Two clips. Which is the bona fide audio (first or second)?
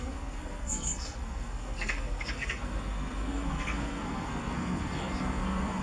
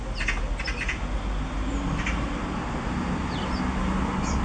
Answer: second